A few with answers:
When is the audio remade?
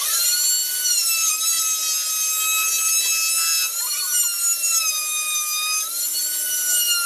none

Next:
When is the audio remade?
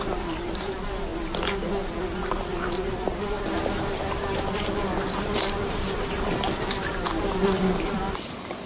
none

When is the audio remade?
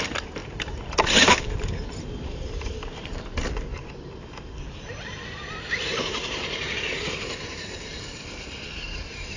0.0-3.7 (vocoder, BigVGAN v2); 4.2-9.4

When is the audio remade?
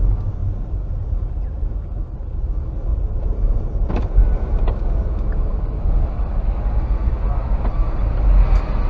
0.4-2.4 (vocoder, BigVGAN v2); 2.9-4.5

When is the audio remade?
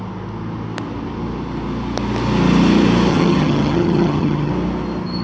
3.1-4.5 (vocoder, HiFi-GAN)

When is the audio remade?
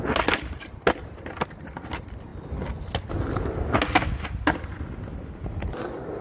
none